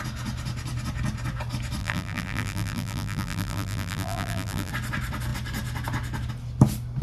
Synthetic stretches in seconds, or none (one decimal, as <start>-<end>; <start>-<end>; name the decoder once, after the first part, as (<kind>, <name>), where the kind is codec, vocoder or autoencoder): 1.8-4.7 (vocoder, BigVGAN v2)